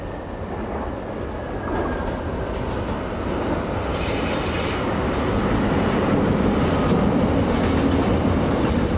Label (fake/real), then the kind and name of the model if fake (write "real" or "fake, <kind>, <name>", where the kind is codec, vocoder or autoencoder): real